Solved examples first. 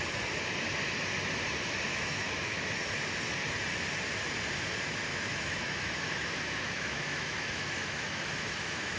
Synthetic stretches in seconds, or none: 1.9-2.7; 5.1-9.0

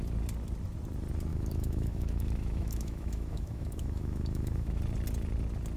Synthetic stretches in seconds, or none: 1.3-4.8

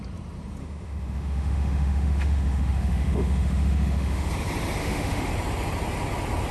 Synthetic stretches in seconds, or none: 0.6-4.3; 4.8-5.3